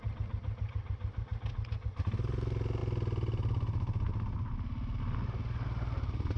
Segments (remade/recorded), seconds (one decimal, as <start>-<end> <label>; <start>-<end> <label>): 0.0-6.4 recorded